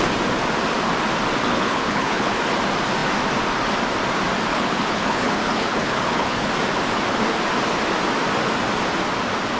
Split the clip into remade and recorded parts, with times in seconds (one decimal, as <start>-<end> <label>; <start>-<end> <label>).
0.0-1.5 recorded; 1.5-2.4 remade; 2.4-4.5 recorded; 4.5-6.5 remade; 6.5-9.6 recorded